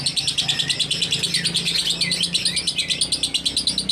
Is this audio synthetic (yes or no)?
no